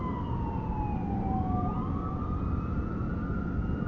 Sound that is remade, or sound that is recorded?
recorded